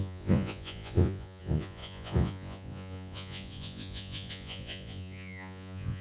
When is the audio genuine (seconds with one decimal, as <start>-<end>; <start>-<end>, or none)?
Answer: none